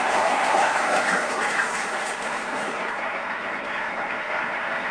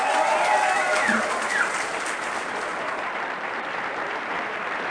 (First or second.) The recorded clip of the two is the second